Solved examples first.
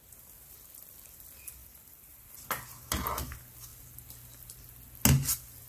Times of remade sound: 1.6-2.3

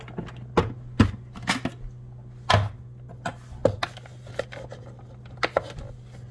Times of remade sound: none

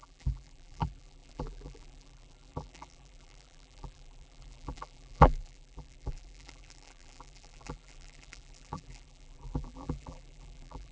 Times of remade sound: 0.0-10.9

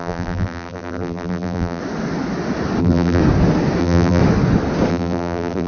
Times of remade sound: 0.0-1.8; 2.8-3.2; 3.8-4.2; 4.9-5.7